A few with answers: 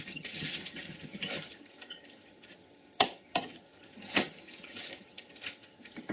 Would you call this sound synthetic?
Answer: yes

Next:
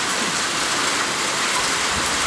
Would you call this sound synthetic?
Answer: no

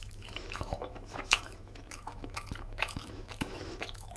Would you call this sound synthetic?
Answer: yes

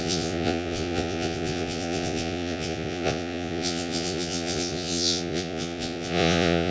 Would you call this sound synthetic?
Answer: yes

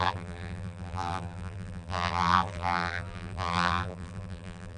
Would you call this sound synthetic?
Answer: yes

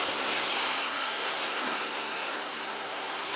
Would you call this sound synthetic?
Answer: yes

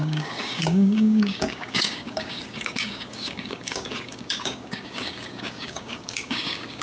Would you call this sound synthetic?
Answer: yes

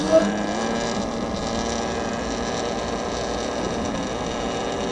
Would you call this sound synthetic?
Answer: no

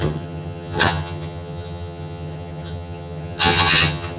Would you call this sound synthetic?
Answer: yes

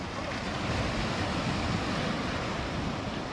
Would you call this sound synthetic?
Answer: no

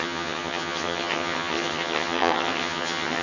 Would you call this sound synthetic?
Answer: yes